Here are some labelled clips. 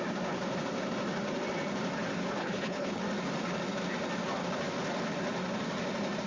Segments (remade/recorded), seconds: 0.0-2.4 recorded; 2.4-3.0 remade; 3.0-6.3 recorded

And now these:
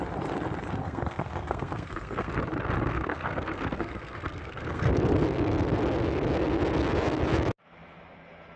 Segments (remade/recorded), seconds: 0.0-0.8 recorded; 0.8-2.3 remade; 2.3-2.9 recorded; 2.9-4.9 remade; 4.9-8.6 recorded

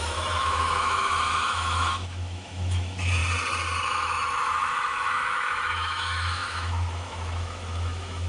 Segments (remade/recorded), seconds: 0.0-3.2 remade; 3.2-3.8 recorded; 3.8-8.3 remade